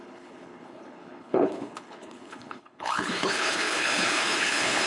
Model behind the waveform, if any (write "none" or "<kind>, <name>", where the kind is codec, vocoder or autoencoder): codec, HILCodec